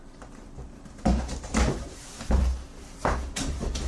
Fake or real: fake